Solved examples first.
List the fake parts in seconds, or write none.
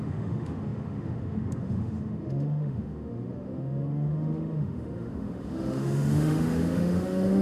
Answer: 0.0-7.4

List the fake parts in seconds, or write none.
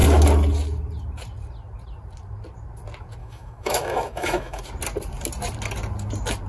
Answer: 3.2-4.6